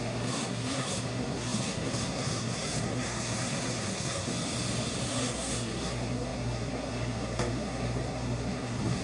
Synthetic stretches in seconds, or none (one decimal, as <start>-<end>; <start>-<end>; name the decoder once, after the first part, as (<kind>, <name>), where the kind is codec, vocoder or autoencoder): 0.0-4.3 (codec, SNAC); 5.1-9.0